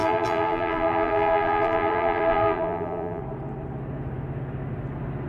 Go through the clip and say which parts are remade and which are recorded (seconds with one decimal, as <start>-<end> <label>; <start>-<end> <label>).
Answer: 0.0-3.2 remade; 3.2-5.3 recorded